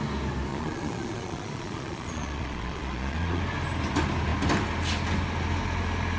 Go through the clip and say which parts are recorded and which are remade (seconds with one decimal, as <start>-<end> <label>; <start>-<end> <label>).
0.0-0.5 recorded; 0.5-3.4 remade; 3.4-6.2 recorded

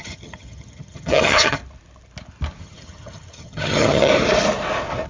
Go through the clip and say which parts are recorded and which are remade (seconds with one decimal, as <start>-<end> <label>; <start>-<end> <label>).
0.0-1.6 remade; 1.6-2.6 recorded; 2.6-4.1 remade; 4.1-5.1 recorded

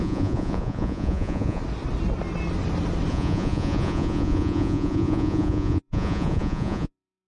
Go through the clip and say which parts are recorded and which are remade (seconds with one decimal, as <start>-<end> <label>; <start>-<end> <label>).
0.0-1.6 remade; 1.6-3.1 recorded; 3.1-7.3 remade

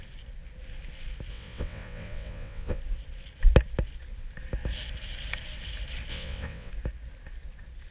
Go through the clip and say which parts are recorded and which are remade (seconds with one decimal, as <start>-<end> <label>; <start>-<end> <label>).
0.0-1.3 recorded; 1.3-2.8 remade; 2.8-6.1 recorded; 6.1-6.7 remade; 6.7-7.9 recorded